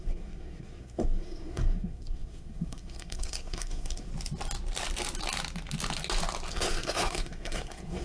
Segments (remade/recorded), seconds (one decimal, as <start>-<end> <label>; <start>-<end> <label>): 0.0-4.1 remade; 4.1-6.5 recorded; 6.5-8.0 remade